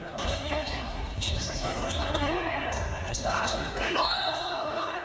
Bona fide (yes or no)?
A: no